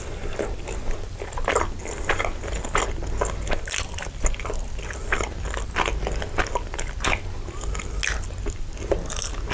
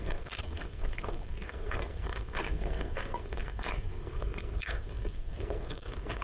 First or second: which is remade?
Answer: second